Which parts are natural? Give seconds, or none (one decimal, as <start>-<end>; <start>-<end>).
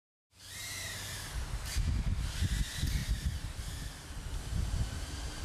0.0-0.6; 1.3-3.0; 3.6-4.5